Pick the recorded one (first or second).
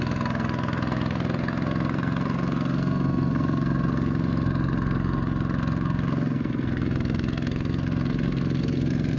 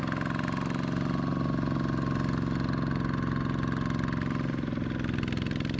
second